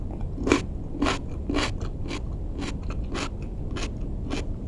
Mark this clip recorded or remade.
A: recorded